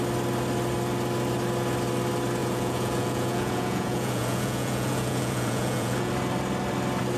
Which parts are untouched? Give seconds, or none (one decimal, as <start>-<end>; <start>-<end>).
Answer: 0.0-2.4; 6.1-7.2